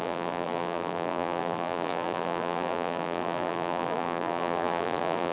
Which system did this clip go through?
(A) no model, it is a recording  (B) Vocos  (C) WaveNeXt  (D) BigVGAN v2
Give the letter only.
D